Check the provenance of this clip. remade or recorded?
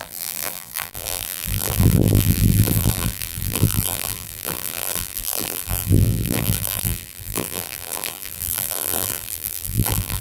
remade